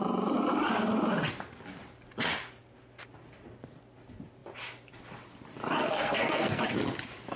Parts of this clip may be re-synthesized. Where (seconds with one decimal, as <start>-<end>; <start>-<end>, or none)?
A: 5.8-6.6